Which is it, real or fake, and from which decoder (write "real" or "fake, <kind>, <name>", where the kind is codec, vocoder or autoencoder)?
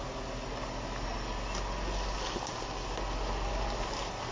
real